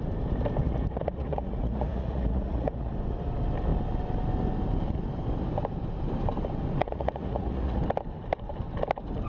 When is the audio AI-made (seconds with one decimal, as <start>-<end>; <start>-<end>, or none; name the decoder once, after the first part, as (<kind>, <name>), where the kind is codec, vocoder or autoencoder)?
0.6-2.9 (vocoder, Vocos); 6.8-7.8